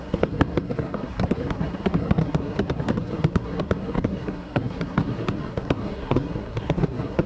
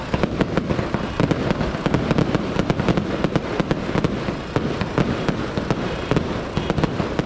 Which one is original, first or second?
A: second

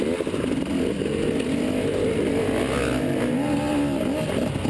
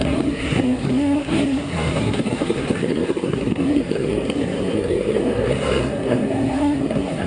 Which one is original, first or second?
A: first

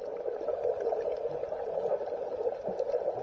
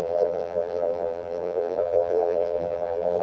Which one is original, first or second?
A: first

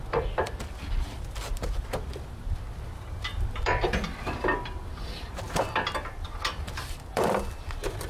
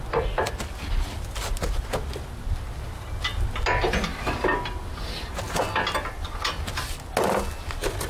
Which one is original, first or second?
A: second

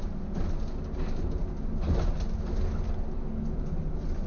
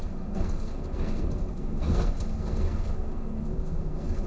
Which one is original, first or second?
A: first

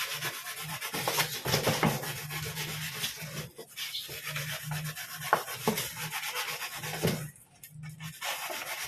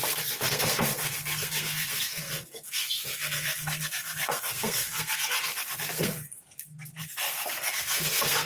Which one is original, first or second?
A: first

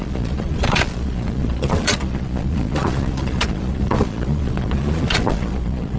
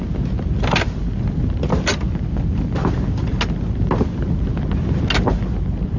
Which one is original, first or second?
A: second